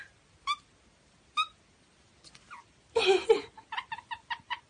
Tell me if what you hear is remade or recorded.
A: recorded